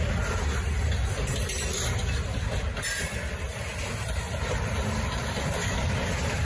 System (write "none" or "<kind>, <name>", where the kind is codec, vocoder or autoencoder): vocoder, BigVGAN v2